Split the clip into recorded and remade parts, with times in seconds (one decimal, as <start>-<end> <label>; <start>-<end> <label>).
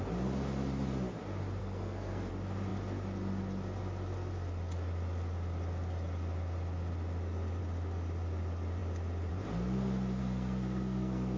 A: 0.0-1.6 recorded; 1.6-2.3 remade; 2.3-10.2 recorded; 10.2-11.4 remade